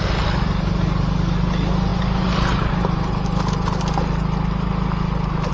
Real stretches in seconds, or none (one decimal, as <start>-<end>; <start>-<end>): 0.0-5.5